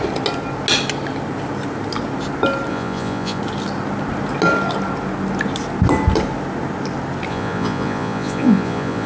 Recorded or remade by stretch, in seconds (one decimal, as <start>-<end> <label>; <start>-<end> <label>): 0.0-2.7 recorded; 2.7-3.4 remade; 3.4-7.3 recorded; 7.3-9.1 remade